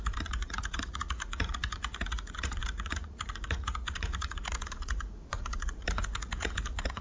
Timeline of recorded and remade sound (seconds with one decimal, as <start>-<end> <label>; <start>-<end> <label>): 0.0-7.0 remade